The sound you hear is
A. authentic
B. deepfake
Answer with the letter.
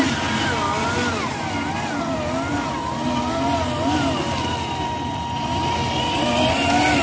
A